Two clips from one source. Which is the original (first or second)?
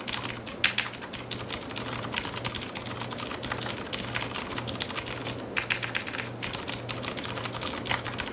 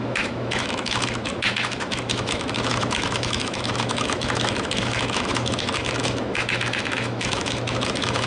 first